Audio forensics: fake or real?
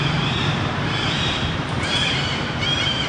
fake